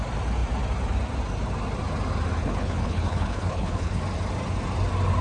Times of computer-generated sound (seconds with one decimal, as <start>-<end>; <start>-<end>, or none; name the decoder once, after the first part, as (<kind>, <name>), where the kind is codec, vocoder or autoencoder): 2.4-4.0 (codec, HILCodec)